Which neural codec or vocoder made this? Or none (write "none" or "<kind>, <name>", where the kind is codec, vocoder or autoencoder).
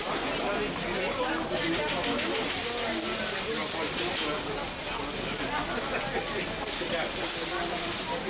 none